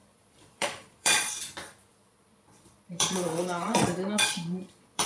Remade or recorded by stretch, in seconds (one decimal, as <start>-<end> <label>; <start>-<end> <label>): 0.0-1.3 remade; 1.3-1.9 recorded; 1.9-5.1 remade

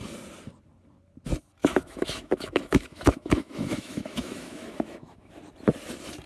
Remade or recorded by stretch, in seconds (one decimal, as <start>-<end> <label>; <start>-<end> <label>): 0.0-1.6 recorded; 1.6-5.3 remade; 5.3-6.3 recorded

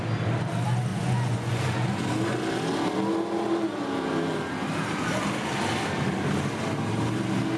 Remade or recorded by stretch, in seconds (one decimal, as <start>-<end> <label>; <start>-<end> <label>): 0.0-0.9 recorded; 0.9-1.6 remade; 1.6-7.6 recorded

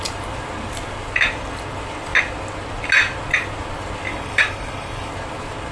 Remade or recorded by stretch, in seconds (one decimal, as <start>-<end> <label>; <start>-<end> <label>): 0.0-4.1 recorded; 4.1-5.1 remade; 5.1-5.7 recorded

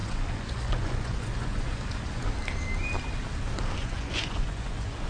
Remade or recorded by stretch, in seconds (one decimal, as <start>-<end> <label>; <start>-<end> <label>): 0.0-2.3 remade; 2.3-3.8 recorded; 3.8-5.1 remade

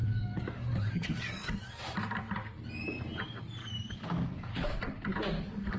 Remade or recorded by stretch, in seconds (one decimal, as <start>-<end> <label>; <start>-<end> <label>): 0.0-1.7 remade; 1.7-3.6 recorded; 3.6-4.6 remade; 4.6-5.8 recorded